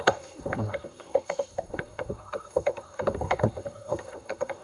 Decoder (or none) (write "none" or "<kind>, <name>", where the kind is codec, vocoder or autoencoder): codec, SNAC